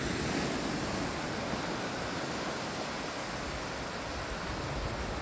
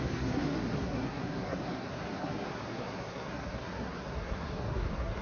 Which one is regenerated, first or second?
second